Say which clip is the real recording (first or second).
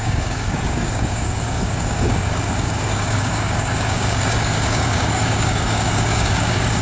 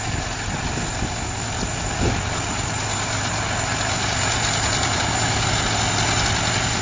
second